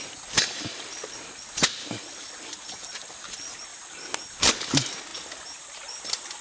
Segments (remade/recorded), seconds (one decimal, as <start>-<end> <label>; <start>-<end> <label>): 0.0-3.7 recorded; 3.7-4.4 remade; 4.4-6.4 recorded